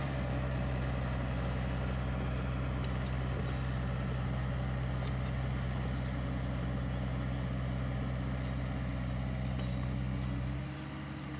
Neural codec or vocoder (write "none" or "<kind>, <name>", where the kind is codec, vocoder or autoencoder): none